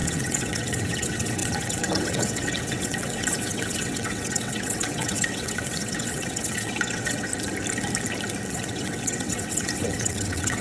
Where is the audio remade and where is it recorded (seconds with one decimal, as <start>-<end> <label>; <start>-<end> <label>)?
0.0-7.3 remade; 7.3-8.5 recorded; 8.5-10.6 remade